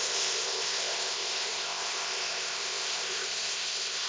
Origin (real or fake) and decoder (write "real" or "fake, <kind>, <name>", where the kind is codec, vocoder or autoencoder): fake, codec, ZipCodec